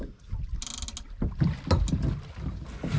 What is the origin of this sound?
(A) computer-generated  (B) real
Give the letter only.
B